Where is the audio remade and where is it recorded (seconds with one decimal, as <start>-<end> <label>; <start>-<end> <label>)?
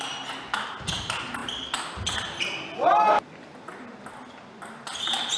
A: 0.0-5.4 recorded